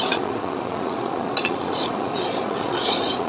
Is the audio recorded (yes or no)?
no